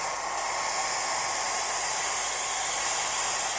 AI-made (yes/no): no